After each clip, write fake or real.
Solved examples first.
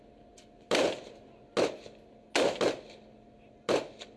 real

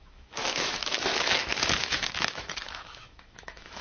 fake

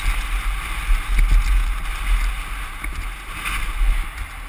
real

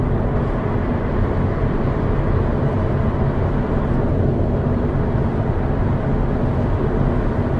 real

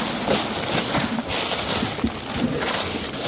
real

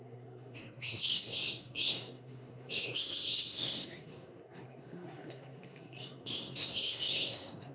fake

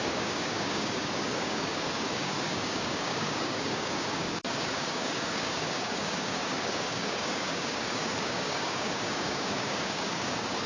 fake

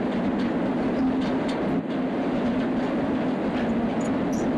real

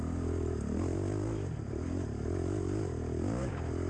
real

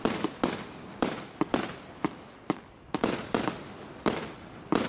real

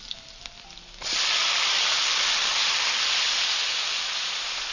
real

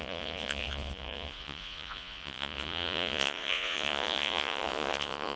fake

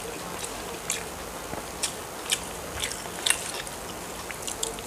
real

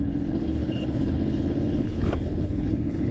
fake